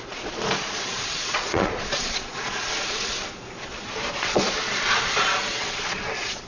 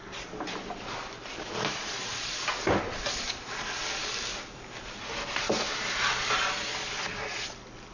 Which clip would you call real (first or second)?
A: second